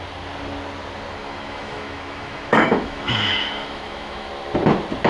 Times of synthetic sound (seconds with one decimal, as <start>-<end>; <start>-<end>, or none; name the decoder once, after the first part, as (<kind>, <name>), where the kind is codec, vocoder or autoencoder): 1.2-4.3 (autoencoder, DAC-VAE)